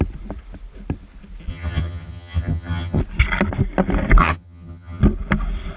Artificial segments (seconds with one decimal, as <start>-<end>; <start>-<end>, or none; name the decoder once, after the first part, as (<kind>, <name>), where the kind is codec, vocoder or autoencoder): 1.5-3.0 (vocoder, HiFi-GAN); 4.2-5.0